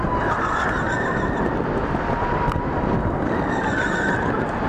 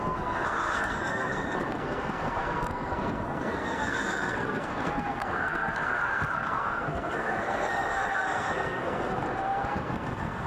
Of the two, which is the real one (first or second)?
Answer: first